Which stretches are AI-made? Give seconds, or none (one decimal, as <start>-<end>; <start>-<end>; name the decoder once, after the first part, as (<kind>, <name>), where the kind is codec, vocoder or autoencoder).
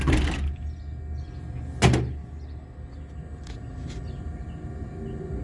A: none